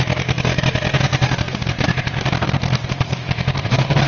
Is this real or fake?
fake